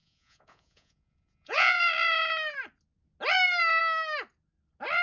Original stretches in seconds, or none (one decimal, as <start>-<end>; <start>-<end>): 1.8-5.0